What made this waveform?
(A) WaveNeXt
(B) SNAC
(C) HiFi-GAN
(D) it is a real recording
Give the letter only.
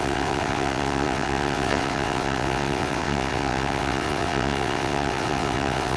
A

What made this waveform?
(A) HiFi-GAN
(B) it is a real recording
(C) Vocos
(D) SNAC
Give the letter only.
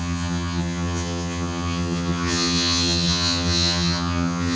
A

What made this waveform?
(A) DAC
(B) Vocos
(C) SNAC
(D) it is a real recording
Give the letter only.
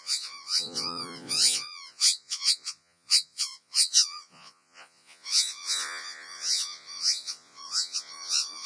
B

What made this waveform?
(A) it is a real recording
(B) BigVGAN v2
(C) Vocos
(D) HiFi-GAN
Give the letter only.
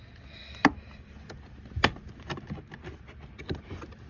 A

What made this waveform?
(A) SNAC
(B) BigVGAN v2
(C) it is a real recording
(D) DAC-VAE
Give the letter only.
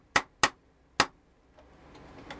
C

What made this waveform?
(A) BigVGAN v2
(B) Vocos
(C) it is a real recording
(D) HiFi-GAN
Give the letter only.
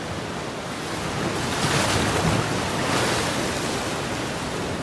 C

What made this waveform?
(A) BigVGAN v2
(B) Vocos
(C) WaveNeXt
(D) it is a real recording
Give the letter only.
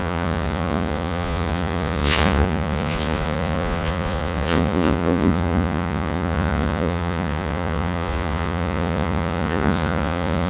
B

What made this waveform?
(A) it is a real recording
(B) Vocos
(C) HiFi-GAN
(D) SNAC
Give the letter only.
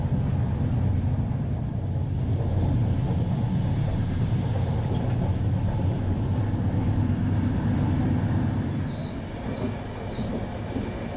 A